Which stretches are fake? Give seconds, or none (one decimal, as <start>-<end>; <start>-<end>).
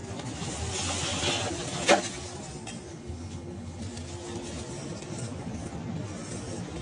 2.9-3.8